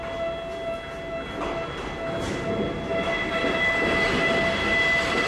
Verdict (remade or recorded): recorded